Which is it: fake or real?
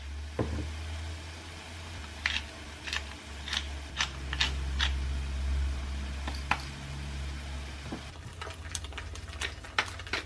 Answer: real